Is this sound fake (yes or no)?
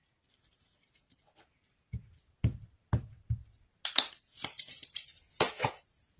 no